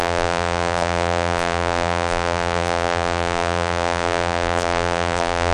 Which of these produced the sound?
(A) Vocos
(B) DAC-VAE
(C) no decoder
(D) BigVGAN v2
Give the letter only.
D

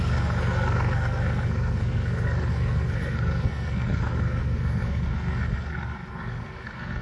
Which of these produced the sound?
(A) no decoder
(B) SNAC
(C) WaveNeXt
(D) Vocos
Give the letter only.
B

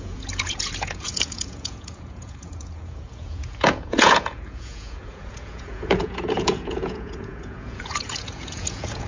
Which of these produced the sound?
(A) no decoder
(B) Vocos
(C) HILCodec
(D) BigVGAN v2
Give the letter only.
B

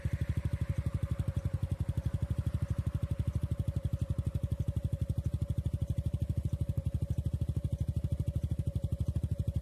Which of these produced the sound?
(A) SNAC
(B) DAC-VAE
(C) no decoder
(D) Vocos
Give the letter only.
C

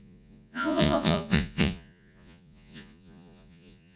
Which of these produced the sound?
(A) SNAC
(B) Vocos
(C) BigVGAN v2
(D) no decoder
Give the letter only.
B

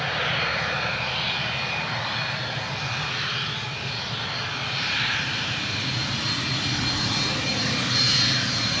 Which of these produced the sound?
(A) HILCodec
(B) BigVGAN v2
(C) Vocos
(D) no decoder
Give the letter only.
D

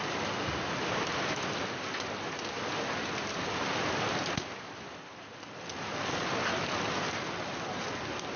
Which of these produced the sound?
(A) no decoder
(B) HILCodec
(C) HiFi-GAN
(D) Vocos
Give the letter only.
A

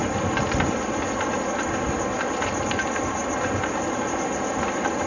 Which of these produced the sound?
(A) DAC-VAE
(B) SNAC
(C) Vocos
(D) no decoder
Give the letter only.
D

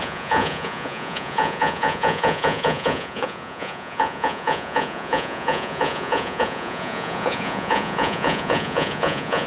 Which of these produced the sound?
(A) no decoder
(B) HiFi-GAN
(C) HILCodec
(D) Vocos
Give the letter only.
D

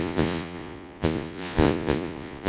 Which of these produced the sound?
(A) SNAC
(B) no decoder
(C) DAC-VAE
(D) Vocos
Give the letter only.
D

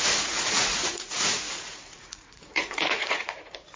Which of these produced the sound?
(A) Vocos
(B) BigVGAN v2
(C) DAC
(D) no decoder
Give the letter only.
A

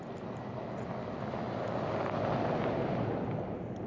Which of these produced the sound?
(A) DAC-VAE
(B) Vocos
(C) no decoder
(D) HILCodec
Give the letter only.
C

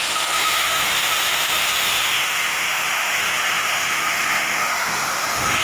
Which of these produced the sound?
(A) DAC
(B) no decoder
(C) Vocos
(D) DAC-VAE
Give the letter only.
D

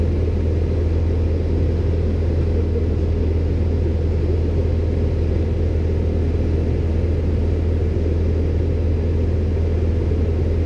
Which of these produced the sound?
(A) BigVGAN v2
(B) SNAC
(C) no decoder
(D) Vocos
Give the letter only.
C